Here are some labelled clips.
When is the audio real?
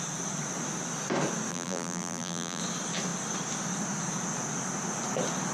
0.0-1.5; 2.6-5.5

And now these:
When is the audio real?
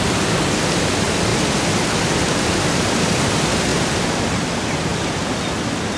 3.7-4.3; 4.9-6.0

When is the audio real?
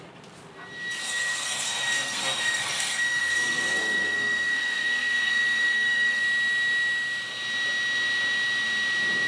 0.0-1.0; 6.2-9.3